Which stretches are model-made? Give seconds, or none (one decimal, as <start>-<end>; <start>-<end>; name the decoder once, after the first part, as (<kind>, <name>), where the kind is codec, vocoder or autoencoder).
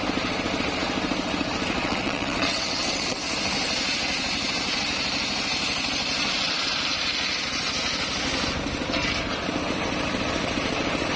1.8-3.2 (vocoder, WaveNeXt)